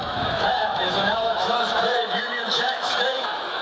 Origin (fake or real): fake